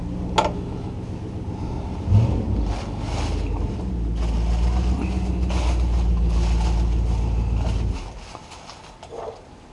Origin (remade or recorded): recorded